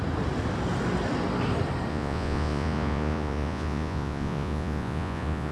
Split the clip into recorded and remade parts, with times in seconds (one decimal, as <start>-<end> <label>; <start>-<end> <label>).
0.0-1.9 recorded; 1.9-5.5 remade